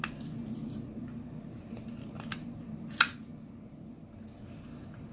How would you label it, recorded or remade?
recorded